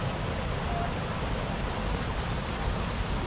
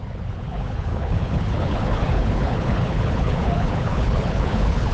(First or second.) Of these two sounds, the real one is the first